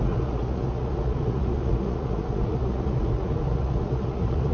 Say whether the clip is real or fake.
fake